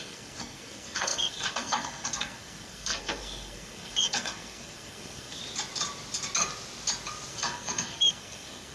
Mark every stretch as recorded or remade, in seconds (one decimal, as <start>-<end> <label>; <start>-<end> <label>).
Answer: 0.0-5.4 remade; 5.4-7.3 recorded; 7.3-8.7 remade